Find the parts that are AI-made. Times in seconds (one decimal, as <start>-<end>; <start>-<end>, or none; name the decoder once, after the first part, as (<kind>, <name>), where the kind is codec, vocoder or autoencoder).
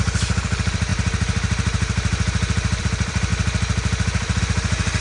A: 0.0-5.0 (vocoder, BigVGAN v2)